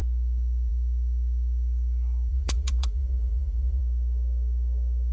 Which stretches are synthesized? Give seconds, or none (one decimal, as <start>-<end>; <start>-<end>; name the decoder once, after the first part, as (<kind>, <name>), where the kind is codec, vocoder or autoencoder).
2.3-3.8 (vocoder, Vocos)